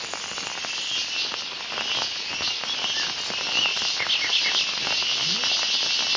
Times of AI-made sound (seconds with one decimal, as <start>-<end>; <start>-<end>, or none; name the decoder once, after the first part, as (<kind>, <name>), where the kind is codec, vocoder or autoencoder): none